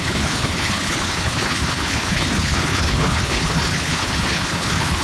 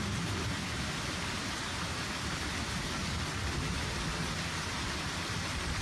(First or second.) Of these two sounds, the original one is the second